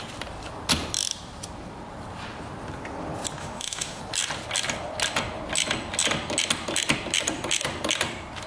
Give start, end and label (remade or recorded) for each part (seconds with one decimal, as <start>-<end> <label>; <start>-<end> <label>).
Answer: 0.0-3.4 recorded; 3.4-4.0 remade; 4.0-8.5 recorded